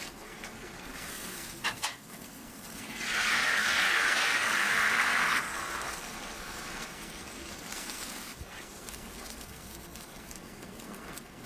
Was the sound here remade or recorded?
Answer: remade